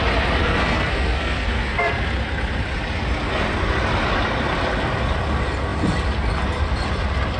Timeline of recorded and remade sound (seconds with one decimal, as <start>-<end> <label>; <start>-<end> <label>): 0.0-0.4 recorded; 0.4-1.9 remade; 1.9-7.4 recorded